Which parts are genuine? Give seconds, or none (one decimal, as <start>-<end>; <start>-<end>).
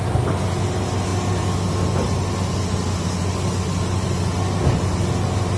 0.0-5.6